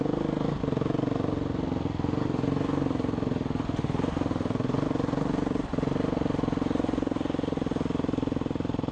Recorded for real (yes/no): yes